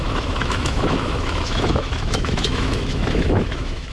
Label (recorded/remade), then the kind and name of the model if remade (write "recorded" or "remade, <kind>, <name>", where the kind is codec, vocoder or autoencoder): remade, autoencoder, DAC-VAE